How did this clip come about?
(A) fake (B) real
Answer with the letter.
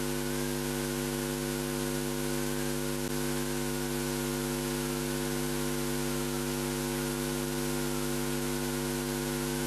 B